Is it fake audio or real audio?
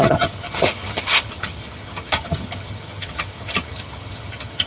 fake